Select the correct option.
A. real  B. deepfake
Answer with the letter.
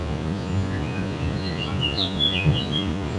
B